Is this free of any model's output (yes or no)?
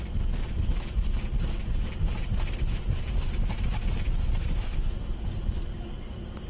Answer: yes